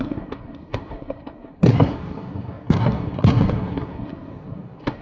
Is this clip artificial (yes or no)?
yes